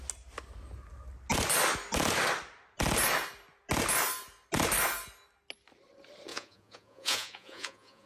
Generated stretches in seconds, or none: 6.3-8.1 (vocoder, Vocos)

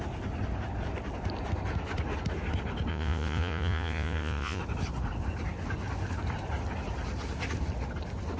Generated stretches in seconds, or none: 2.9-4.6 (vocoder, Vocos)